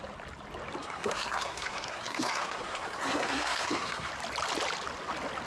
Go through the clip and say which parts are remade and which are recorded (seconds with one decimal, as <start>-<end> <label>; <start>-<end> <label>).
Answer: 0.0-0.8 recorded; 0.8-4.1 remade; 4.1-5.5 recorded